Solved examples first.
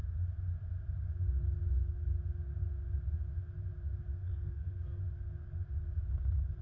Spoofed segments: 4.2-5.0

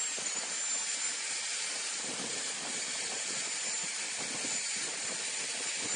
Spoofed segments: 1.5-3.5

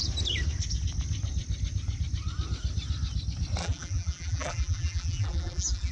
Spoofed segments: 3.6-5.9